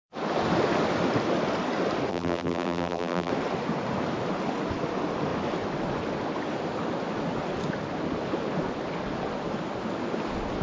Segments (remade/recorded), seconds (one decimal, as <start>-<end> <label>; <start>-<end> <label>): 0.0-2.1 recorded; 2.1-3.3 remade; 3.3-10.6 recorded